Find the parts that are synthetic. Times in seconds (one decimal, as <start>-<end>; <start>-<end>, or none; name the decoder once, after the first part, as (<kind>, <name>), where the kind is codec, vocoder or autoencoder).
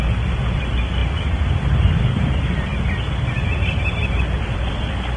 0.0-5.2 (vocoder, BigVGAN v2)